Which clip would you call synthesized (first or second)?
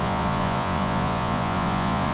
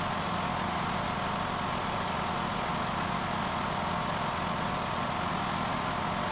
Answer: first